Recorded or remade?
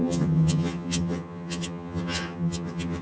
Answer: remade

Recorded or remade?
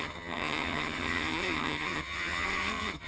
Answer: remade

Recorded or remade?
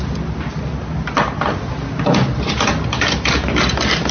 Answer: recorded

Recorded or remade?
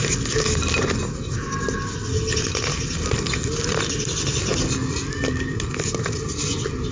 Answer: recorded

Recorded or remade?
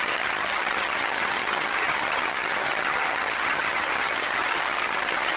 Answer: remade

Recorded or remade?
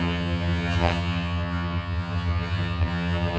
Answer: remade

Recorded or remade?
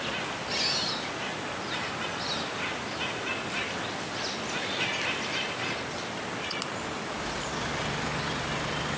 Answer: recorded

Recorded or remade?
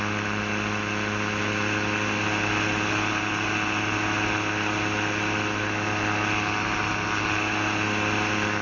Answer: recorded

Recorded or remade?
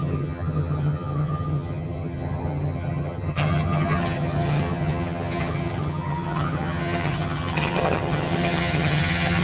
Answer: remade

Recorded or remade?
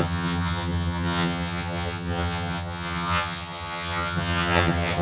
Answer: remade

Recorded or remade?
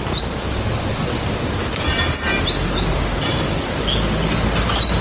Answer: recorded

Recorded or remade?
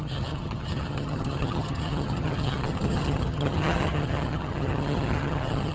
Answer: remade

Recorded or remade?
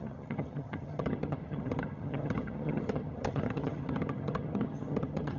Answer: remade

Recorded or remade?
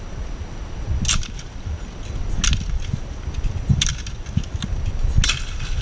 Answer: recorded